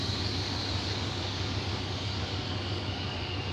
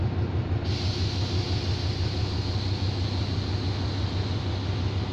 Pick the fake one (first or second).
first